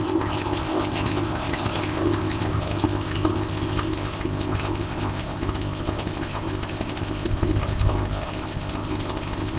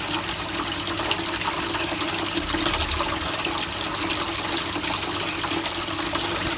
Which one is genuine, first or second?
second